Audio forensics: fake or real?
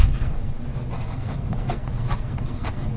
fake